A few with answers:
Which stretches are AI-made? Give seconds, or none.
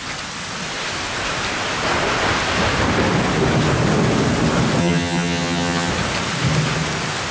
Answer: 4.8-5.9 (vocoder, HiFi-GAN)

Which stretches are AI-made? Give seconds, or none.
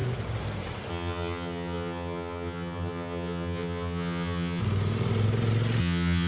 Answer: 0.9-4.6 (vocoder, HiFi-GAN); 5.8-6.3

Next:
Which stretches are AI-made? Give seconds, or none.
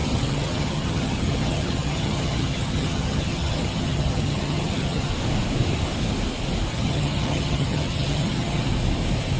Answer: 0.0-5.1 (vocoder, HiFi-GAN); 6.7-8.7